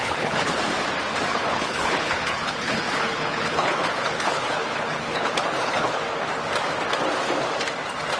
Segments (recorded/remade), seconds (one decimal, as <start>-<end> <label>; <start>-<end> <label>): 0.0-0.6 remade; 0.6-1.3 recorded; 1.3-6.0 remade; 6.0-8.2 recorded